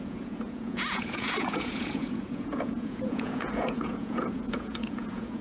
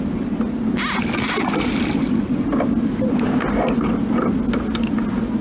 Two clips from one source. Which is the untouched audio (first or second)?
second